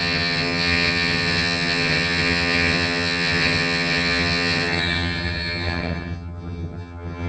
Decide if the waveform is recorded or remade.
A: remade